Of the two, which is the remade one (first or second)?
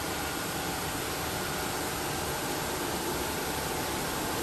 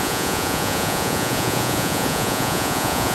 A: second